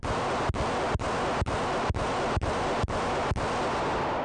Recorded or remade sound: recorded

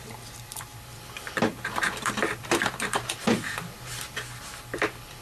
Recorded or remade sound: remade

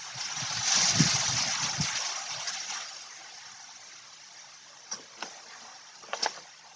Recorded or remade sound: recorded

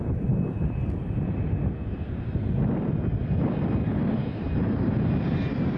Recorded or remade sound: recorded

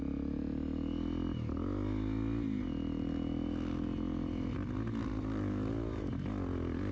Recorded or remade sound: recorded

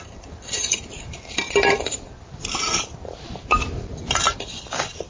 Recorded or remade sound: remade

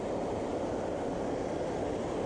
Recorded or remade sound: recorded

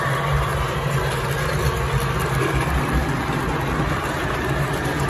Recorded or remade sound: recorded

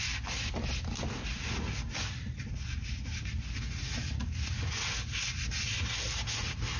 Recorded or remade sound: recorded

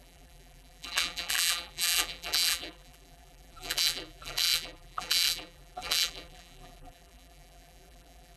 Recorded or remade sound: remade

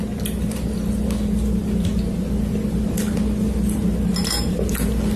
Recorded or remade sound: recorded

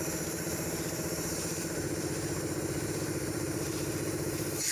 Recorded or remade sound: remade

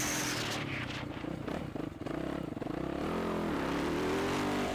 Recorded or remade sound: recorded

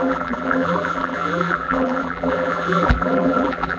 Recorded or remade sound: remade